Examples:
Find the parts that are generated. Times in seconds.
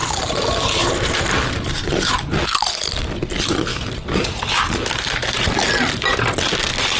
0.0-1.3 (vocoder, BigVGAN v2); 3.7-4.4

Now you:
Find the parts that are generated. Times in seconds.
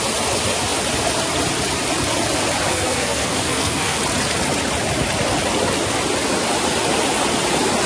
2.7-4.0 (codec, SNAC)